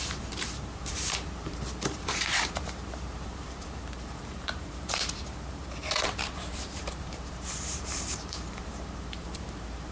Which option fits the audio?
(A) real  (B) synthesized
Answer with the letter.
B